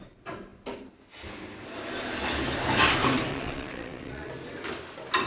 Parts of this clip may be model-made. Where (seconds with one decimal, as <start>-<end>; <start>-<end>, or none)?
3.3-4.3